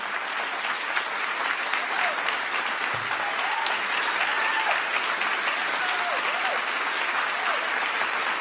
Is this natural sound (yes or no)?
yes